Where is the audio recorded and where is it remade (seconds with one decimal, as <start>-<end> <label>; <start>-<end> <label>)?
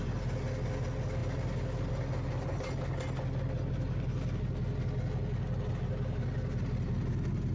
0.0-7.5 recorded